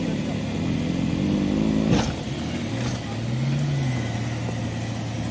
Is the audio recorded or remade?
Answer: recorded